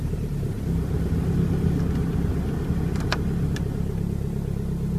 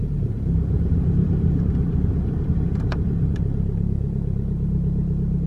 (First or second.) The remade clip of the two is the second